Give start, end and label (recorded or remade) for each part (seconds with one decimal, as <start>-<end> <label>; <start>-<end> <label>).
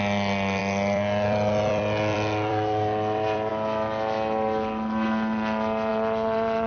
0.0-0.6 recorded; 0.6-3.5 remade; 3.5-5.9 recorded; 5.9-6.7 remade